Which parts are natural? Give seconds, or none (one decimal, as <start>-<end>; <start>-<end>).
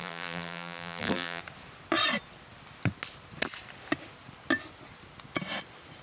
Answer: 1.4-6.0